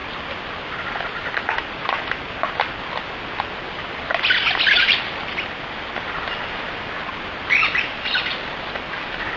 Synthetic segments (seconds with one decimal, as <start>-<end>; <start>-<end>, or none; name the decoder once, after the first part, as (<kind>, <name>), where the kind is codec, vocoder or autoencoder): none

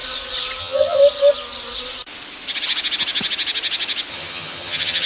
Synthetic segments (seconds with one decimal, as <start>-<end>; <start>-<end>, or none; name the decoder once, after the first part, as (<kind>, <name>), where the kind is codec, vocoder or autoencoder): 0.6-1.0 (vocoder, HiFi-GAN); 4.1-5.1

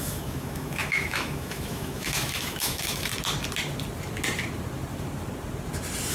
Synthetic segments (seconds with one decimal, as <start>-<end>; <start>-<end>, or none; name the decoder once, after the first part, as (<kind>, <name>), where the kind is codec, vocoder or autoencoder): 0.0-3.1 (autoencoder, DAC-VAE)

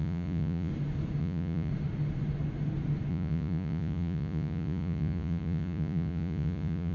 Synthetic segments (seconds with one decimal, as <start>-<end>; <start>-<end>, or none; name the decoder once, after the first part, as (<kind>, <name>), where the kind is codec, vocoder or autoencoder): 0.0-0.7 (vocoder, Vocos); 1.2-1.7; 3.1-6.9

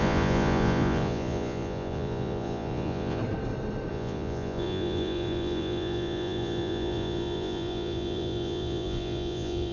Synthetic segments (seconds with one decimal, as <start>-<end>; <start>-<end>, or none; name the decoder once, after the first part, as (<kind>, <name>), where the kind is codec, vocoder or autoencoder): 0.0-3.2 (vocoder, Vocos); 3.9-9.7

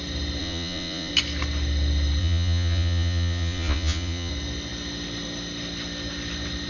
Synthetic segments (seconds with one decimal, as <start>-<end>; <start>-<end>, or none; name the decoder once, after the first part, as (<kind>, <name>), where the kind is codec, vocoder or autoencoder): 0.4-1.1 (vocoder, Vocos); 2.2-4.3

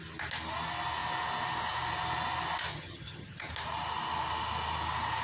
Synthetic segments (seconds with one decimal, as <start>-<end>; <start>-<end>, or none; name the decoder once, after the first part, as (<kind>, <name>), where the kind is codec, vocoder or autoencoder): 2.7-3.5 (vocoder, HiFi-GAN)

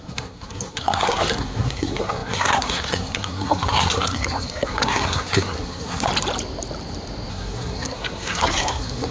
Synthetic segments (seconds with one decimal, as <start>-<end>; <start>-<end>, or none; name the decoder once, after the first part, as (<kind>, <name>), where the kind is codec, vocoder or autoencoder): 0.0-6.1 (codec, SNAC); 7.3-9.1